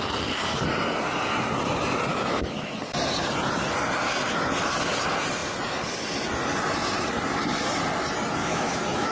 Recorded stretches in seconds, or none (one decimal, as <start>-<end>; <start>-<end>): 0.0-2.1; 2.8-8.4